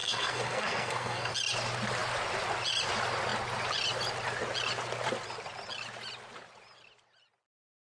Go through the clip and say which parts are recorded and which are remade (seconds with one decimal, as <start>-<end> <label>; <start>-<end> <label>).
0.0-1.3 remade; 1.3-7.8 recorded